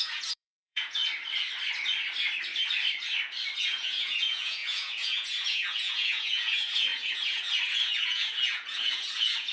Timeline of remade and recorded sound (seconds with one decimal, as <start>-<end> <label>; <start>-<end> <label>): 0.0-1.0 remade; 1.0-3.6 recorded; 3.6-9.5 remade